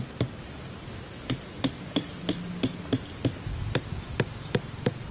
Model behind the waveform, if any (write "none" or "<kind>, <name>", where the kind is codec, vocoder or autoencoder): none